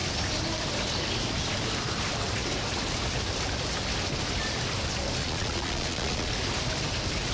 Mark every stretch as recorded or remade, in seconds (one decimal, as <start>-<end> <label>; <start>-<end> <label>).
0.0-5.2 recorded; 5.2-6.3 remade; 6.3-7.3 recorded